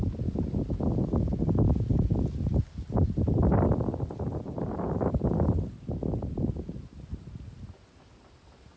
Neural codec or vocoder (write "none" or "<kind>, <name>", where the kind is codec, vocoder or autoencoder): none